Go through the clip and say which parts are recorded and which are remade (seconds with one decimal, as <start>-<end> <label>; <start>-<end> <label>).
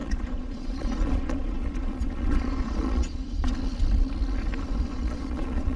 0.0-3.5 remade; 3.5-4.9 recorded; 4.9-5.8 remade